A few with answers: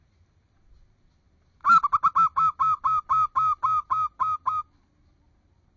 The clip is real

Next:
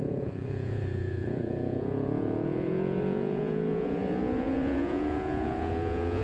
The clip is fake